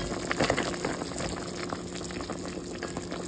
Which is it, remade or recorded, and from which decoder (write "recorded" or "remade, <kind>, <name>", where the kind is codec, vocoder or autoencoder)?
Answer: recorded